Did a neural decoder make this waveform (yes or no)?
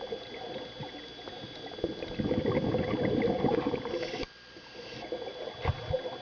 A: no